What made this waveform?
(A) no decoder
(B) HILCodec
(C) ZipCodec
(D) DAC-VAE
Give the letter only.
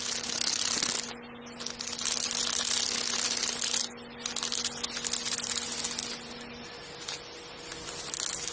A